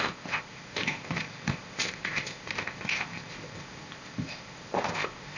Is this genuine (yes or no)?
no